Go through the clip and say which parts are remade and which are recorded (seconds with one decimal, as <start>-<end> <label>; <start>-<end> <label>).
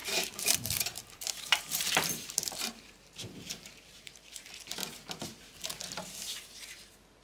0.0-4.3 remade; 4.3-7.2 recorded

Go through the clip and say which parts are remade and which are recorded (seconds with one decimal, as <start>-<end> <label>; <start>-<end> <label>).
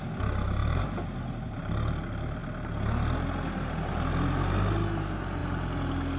0.0-6.2 recorded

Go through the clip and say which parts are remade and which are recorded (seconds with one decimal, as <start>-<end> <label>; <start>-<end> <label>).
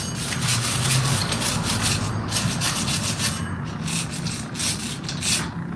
0.0-5.8 recorded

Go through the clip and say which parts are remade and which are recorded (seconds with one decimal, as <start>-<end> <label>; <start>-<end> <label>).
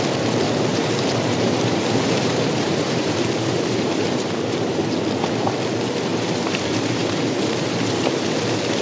0.0-0.7 recorded; 0.7-4.8 remade; 4.8-6.1 recorded; 6.1-8.2 remade; 8.2-8.8 recorded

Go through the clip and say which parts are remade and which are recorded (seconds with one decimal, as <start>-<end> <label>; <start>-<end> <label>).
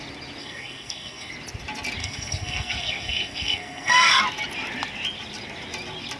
0.0-0.4 recorded; 0.4-1.3 remade; 1.3-2.0 recorded; 2.0-4.2 remade; 4.2-6.2 recorded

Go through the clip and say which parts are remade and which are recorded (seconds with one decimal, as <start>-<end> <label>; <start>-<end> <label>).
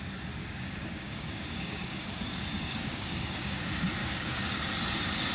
0.0-0.4 recorded; 0.4-3.6 remade; 3.6-4.0 recorded; 4.0-4.6 remade; 4.6-5.3 recorded